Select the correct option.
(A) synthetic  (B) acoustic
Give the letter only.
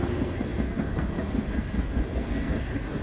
A